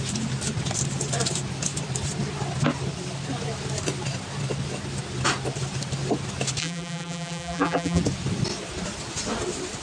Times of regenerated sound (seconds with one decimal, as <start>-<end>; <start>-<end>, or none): 6.6-8.0